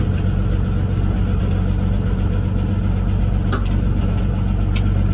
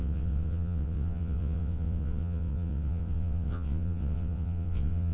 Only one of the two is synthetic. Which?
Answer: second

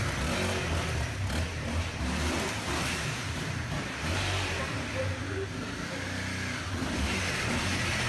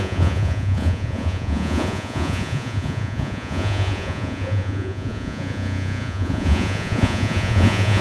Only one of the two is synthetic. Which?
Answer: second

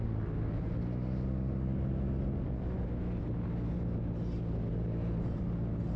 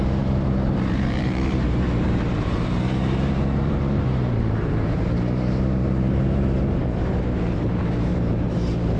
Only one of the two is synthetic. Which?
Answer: second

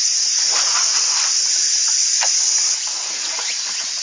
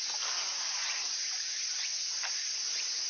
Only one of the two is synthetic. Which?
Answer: first